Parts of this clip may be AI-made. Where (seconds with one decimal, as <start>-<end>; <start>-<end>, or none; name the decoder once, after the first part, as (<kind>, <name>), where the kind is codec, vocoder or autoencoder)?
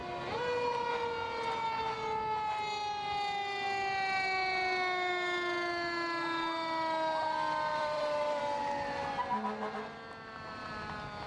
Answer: 7.7-8.4 (vocoder, BigVGAN v2)